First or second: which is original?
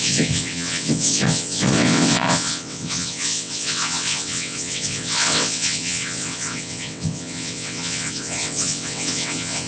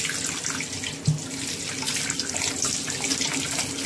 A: second